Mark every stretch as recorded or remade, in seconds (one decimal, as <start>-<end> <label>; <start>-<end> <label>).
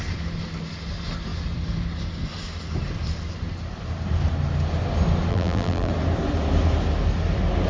0.0-5.3 recorded; 5.3-5.9 remade; 5.9-7.7 recorded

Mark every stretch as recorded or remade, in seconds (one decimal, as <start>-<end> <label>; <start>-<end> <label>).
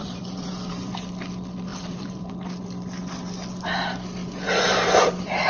0.0-0.9 remade; 0.9-1.7 recorded; 1.7-2.3 remade; 2.3-4.2 recorded; 4.2-5.5 remade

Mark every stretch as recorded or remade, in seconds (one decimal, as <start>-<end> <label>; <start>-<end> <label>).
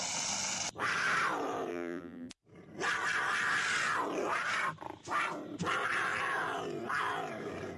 0.0-1.7 recorded; 1.7-2.3 remade; 2.3-7.8 recorded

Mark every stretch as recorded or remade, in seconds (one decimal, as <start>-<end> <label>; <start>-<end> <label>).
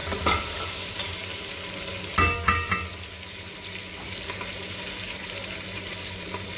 0.0-1.2 remade; 1.2-5.2 recorded; 5.2-6.6 remade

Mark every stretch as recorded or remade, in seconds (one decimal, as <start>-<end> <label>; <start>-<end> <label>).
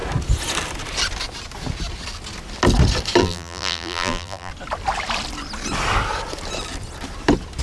0.0-3.2 recorded; 3.2-4.5 remade; 4.5-7.6 recorded